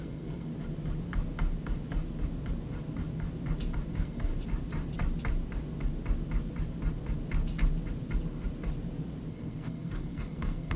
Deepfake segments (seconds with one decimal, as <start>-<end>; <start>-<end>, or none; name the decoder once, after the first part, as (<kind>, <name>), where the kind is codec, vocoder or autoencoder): 0.0-0.5 (codec, SNAC); 3.9-4.3; 9.3-10.8